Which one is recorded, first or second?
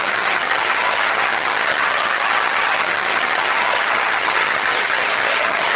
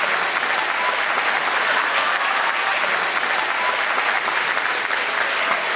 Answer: second